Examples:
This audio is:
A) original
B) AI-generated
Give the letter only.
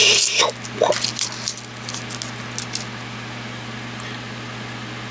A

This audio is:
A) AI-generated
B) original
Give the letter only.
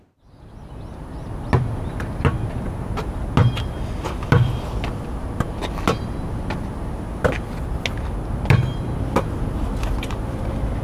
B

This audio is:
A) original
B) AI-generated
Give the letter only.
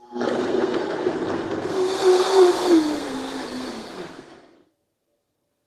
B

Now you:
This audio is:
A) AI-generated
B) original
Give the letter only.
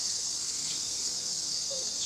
A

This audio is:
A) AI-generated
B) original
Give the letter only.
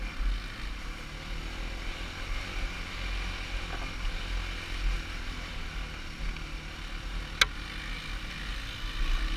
B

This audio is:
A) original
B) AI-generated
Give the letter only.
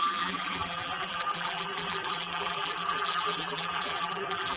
B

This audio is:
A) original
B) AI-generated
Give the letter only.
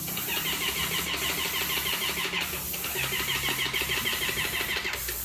A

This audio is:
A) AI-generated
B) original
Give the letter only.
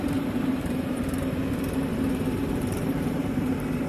A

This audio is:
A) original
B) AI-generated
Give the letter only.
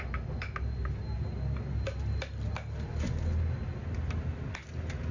A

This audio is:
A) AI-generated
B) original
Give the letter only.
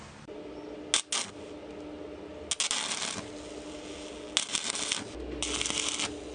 B